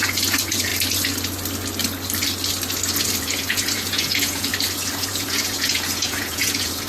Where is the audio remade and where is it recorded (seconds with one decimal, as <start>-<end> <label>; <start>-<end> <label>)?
0.0-0.7 remade; 0.7-3.2 recorded; 3.2-4.5 remade; 4.5-5.0 recorded; 5.0-6.9 remade